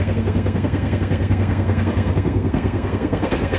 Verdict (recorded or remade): remade